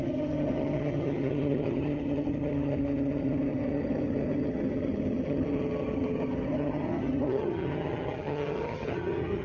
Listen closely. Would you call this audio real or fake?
fake